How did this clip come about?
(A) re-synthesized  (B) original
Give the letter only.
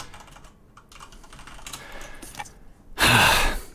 B